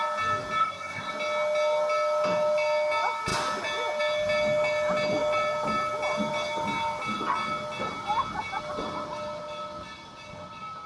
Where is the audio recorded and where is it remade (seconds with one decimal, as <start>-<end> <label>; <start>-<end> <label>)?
0.0-0.6 recorded; 0.6-1.1 remade; 1.1-10.9 recorded